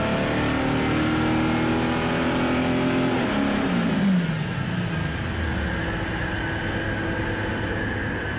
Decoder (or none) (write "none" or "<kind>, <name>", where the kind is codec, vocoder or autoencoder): none